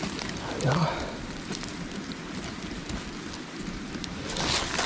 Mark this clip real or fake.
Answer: real